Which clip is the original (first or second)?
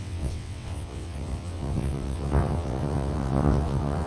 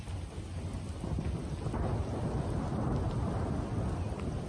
second